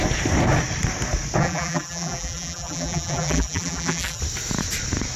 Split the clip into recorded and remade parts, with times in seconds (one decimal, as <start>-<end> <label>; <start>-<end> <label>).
0.0-1.4 recorded; 1.4-4.2 remade; 4.2-5.2 recorded